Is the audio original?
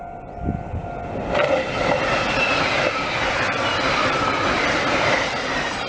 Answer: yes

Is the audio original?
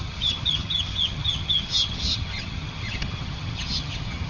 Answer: no